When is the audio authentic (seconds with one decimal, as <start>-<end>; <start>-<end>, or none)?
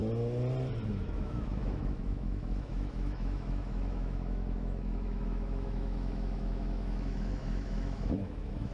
0.0-0.9